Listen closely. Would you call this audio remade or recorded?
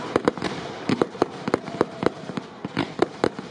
remade